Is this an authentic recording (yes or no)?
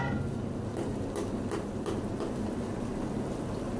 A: yes